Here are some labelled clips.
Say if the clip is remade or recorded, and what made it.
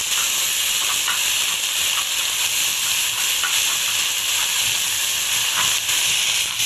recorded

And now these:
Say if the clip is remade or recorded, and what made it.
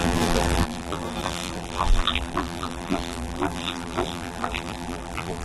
remade, vocoder, BigVGAN v2